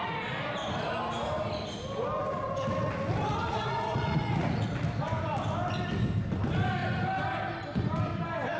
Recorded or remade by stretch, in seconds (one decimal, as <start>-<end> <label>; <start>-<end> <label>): 0.0-3.4 recorded; 3.4-4.6 remade; 4.6-8.6 recorded